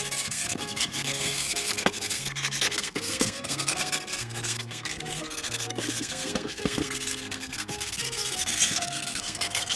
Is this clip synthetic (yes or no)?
yes